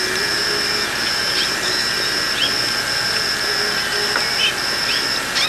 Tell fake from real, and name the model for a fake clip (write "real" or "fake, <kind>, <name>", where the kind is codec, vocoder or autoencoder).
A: real